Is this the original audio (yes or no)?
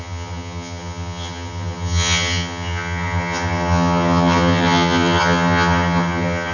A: no